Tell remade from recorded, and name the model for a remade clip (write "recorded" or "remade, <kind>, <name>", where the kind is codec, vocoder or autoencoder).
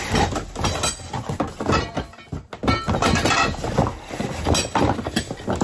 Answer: recorded